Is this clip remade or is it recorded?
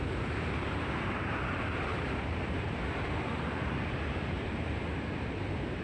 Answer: remade